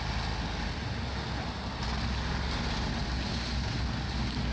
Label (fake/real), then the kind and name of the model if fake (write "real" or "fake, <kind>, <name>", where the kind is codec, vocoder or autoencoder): real